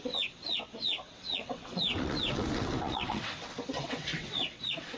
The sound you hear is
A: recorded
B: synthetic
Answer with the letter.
B